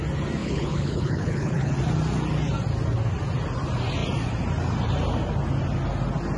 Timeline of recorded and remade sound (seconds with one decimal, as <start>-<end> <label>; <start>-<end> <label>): 0.0-0.4 recorded; 0.4-1.7 remade; 1.7-6.4 recorded